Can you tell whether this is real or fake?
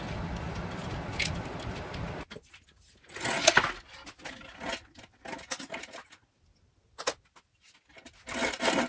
real